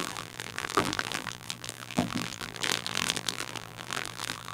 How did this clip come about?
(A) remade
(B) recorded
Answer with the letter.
A